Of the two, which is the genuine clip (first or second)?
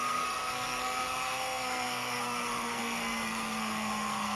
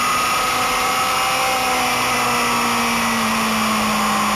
second